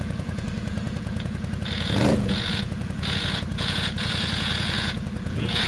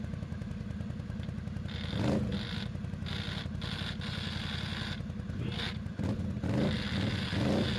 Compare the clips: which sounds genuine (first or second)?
second